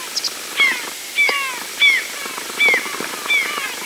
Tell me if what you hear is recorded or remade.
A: recorded